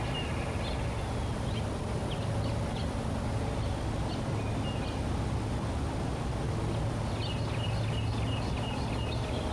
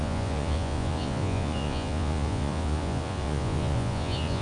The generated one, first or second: second